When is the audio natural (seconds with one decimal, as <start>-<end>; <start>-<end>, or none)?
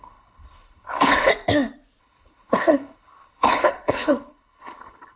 1.3-2.0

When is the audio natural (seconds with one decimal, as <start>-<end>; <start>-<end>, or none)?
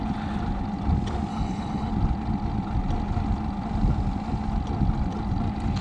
0.0-1.3; 1.9-5.8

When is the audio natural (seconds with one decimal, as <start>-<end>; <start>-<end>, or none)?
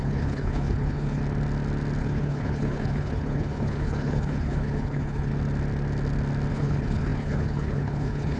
1.2-2.0; 5.3-6.5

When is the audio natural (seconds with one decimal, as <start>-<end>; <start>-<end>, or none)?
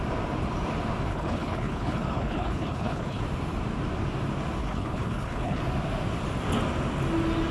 0.0-1.1; 3.2-4.6; 5.6-7.5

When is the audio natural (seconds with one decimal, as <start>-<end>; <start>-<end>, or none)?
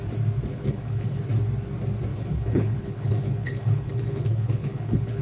0.0-0.5; 1.2-2.1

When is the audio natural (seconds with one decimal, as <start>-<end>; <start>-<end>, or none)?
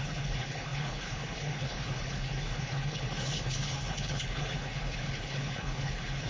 none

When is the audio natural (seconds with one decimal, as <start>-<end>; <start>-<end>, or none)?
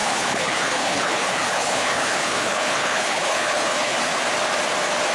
4.1-5.1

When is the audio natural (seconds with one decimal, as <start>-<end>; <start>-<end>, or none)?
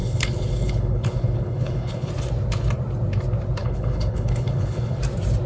2.1-3.6; 5.0-5.5